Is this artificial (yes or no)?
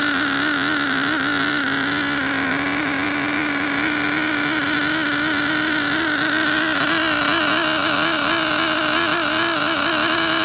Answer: no